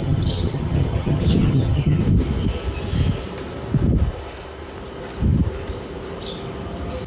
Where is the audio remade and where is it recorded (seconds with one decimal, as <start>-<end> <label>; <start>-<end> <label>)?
0.0-2.0 remade; 2.0-7.1 recorded